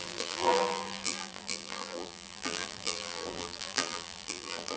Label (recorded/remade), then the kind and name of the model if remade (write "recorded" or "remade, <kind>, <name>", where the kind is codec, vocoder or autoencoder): remade, vocoder, BigVGAN v2